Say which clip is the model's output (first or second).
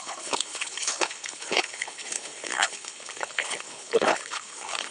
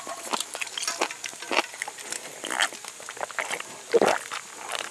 first